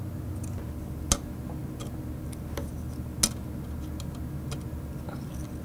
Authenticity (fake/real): real